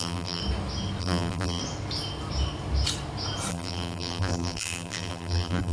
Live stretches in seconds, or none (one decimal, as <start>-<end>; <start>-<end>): 0.4-1.0; 1.6-3.5